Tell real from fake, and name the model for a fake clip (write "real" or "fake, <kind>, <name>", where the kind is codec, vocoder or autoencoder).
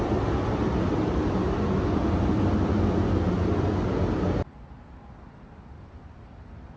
real